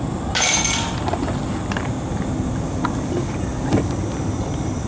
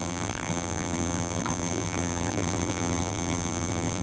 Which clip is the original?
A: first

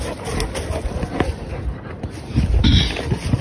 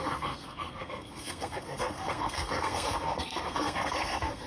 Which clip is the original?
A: first